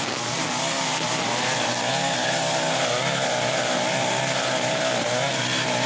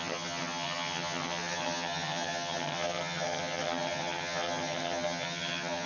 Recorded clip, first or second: first